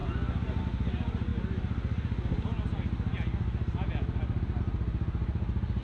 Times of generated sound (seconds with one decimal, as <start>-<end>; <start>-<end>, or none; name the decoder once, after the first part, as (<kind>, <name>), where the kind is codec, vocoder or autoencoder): none